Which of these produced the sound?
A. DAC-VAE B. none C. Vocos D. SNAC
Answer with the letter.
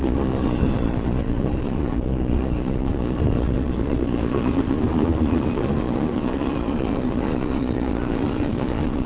C